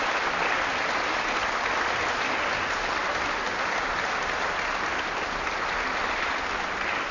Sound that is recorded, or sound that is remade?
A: recorded